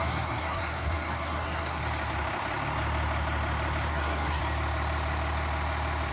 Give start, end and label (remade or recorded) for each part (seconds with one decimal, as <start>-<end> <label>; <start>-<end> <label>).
0.0-1.8 remade; 1.8-3.9 recorded; 3.9-4.4 remade; 4.4-6.1 recorded